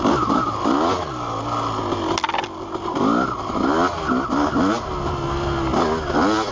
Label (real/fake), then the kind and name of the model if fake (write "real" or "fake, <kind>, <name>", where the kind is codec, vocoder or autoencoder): real